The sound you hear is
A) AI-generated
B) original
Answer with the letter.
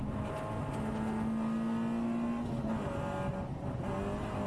B